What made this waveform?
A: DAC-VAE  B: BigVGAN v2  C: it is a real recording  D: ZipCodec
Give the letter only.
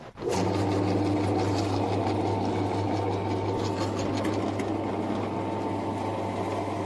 C